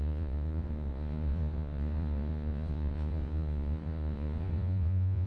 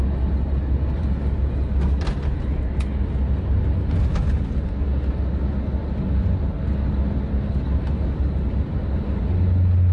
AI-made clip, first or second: first